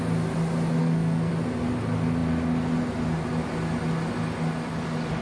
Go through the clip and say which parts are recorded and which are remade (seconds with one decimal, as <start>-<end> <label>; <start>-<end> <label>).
0.0-0.8 recorded; 0.8-1.3 remade; 1.3-5.2 recorded